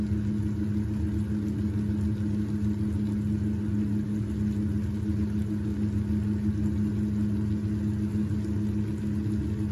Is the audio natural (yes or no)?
yes